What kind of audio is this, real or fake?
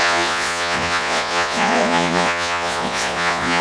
fake